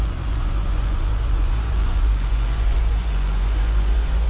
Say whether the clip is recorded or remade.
remade